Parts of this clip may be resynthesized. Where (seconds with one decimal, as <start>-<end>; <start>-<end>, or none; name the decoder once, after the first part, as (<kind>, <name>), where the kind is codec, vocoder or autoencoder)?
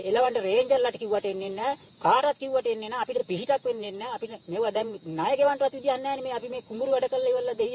0.0-2.2 (vocoder, Vocos); 3.2-5.7; 6.4-7.7